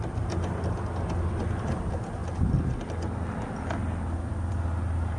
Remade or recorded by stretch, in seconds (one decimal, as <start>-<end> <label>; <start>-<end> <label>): 0.0-5.2 recorded